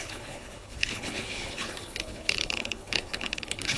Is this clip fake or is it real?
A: fake